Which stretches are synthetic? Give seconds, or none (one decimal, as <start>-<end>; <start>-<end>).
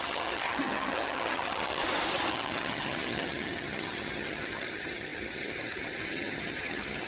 0.0-1.8; 2.3-7.1